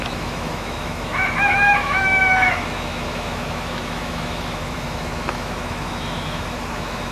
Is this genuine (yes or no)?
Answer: no